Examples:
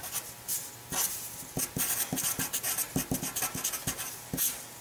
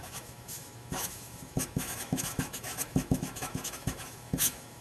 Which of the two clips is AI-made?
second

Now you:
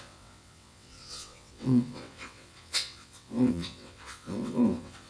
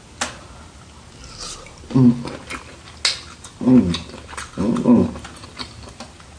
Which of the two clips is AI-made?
first